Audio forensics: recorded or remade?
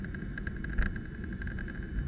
recorded